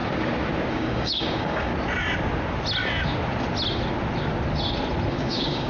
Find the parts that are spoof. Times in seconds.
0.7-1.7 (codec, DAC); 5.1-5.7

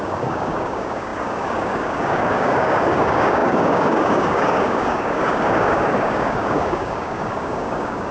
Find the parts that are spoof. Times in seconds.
0.0-8.1 (codec, DAC)

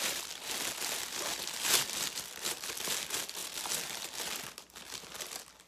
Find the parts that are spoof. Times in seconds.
none